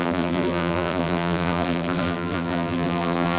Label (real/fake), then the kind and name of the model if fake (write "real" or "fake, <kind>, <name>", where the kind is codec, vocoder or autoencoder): fake, vocoder, BigVGAN v2